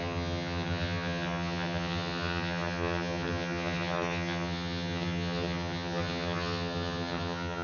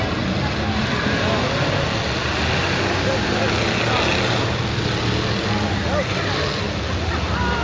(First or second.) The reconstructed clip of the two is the first